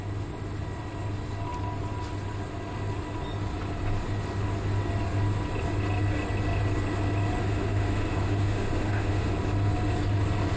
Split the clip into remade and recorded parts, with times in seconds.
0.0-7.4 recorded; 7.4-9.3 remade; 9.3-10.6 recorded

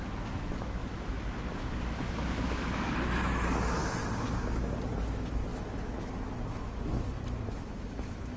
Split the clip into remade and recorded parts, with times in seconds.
0.0-3.8 remade; 3.8-5.0 recorded; 5.0-8.4 remade

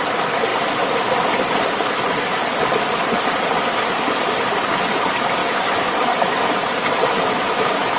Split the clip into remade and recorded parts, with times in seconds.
0.0-5.4 recorded; 5.4-6.5 remade; 6.5-7.0 recorded; 7.0-8.0 remade

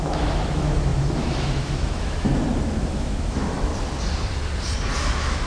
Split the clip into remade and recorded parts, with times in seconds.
0.0-2.3 remade; 2.3-2.8 recorded; 2.8-3.7 remade; 3.7-5.1 recorded; 5.1-5.5 remade

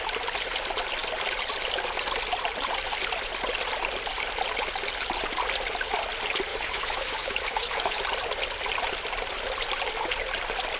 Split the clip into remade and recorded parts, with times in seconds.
0.0-6.5 recorded; 6.5-8.0 remade; 8.0-10.8 recorded